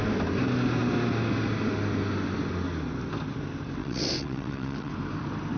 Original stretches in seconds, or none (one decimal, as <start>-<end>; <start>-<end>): 0.0-3.8; 4.9-5.6